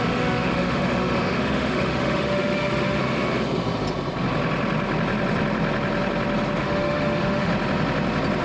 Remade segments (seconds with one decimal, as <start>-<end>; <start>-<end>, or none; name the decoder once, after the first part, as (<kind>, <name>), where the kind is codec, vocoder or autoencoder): 0.0-3.0 (autoencoder, DAC-VAE); 6.6-7.5